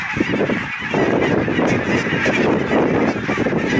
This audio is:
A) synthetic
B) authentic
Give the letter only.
B